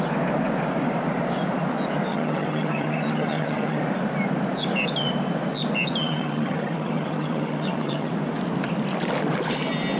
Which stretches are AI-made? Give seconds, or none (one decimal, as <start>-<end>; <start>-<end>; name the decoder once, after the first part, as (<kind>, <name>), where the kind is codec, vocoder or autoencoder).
2.1-3.8 (vocoder, HiFi-GAN); 6.0-8.1